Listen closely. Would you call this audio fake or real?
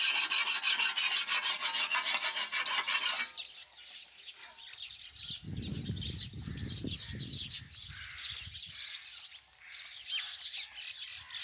real